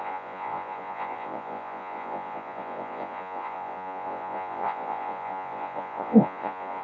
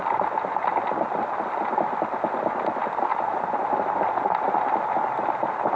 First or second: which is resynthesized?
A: first